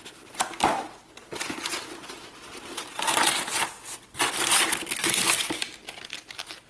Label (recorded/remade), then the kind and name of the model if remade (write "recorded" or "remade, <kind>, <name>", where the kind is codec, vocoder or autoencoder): recorded